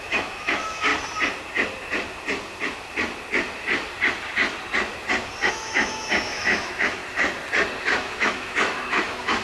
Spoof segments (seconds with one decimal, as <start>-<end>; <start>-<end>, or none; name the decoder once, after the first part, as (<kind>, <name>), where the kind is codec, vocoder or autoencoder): 0.0-0.9 (autoencoder, DAC-VAE); 5.5-7.0; 7.8-9.4